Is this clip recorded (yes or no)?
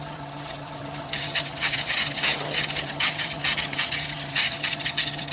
no